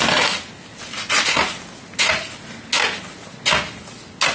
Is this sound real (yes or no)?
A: yes